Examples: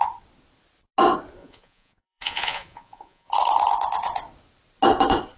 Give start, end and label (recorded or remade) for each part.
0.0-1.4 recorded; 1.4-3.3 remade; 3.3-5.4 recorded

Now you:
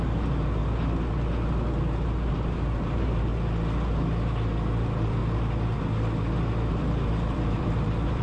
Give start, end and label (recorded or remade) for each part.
0.0-0.6 remade; 0.6-2.3 recorded; 2.3-3.3 remade; 3.3-4.8 recorded; 4.8-5.2 remade; 5.2-6.7 recorded; 6.7-8.2 remade

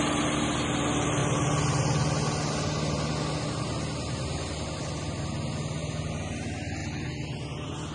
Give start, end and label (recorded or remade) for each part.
0.0-7.9 recorded

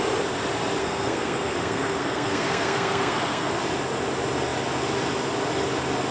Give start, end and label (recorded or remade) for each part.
0.0-0.8 recorded; 0.8-3.6 remade; 3.6-6.1 recorded